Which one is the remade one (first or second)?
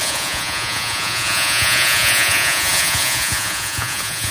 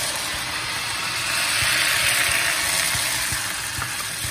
first